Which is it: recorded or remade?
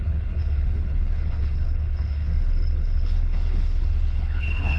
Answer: remade